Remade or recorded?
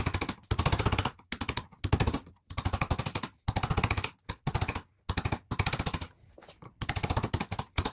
recorded